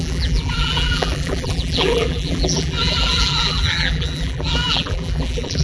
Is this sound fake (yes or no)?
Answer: yes